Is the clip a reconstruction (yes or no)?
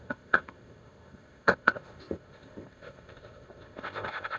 yes